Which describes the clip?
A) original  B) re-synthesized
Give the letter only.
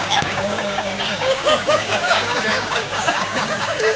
B